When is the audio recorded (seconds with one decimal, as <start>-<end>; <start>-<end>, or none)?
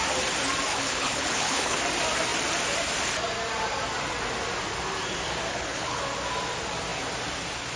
0.0-0.7; 1.8-5.5; 6.0-7.8